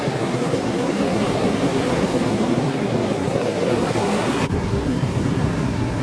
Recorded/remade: remade